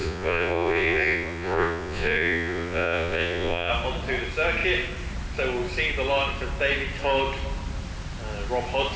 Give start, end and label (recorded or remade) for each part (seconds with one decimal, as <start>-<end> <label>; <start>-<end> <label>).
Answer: 0.0-3.7 remade; 3.7-9.0 recorded